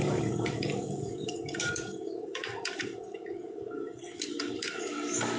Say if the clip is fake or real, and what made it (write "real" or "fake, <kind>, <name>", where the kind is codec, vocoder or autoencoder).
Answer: fake, codec, DAC